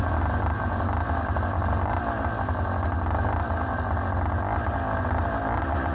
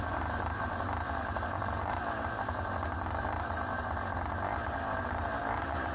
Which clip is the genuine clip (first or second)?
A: first